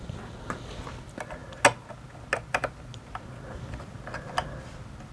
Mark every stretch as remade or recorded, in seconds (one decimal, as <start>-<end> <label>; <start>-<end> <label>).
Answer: 0.0-5.1 recorded